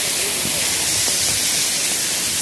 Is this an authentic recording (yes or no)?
yes